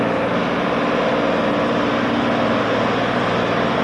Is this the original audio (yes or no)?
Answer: yes